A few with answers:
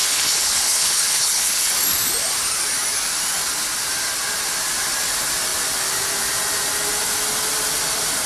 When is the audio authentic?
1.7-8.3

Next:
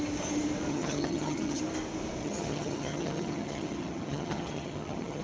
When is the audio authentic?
0.0-0.7; 1.6-2.2

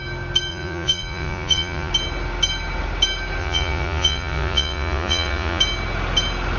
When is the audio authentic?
0.0-0.5; 1.9-3.4; 5.6-6.6